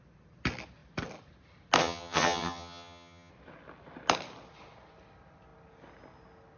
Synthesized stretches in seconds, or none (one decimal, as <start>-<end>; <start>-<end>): 1.8-3.3